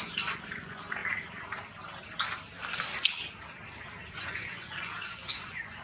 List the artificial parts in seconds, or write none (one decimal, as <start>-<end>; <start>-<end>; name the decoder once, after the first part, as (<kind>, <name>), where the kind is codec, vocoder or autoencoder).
0.0-1.0 (vocoder, Vocos); 4.1-5.8